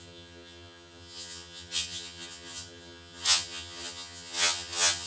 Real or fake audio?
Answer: fake